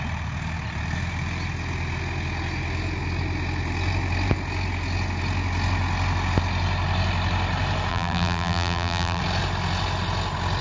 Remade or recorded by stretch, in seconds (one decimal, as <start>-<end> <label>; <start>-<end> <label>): 0.0-7.9 recorded; 7.9-9.2 remade; 9.2-10.6 recorded